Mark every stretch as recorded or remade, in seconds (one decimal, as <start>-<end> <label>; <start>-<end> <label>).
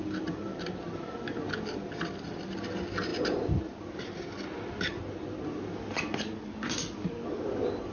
0.0-7.9 recorded